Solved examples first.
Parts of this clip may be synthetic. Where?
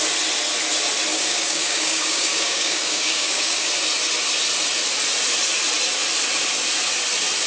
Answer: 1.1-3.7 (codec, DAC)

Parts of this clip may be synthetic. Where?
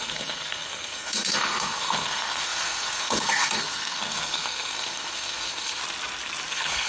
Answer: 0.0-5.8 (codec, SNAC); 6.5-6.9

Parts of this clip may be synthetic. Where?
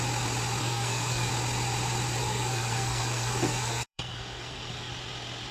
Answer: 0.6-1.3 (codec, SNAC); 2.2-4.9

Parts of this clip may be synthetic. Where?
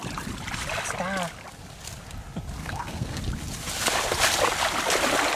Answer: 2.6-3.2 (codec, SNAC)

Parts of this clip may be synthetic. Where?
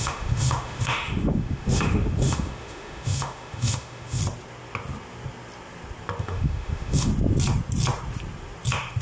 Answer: 0.0-4.2 (autoencoder, DAC-VAE); 6.2-7.1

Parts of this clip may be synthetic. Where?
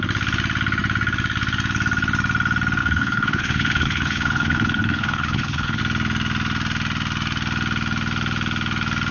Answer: 2.8-5.8 (codec, HILCodec)